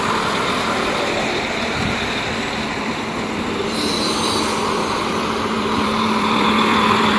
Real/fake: fake